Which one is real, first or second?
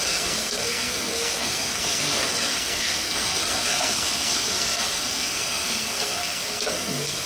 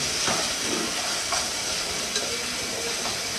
second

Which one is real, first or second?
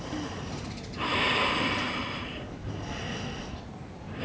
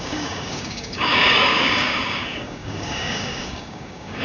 first